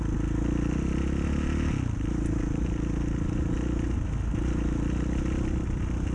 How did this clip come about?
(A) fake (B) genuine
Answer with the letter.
B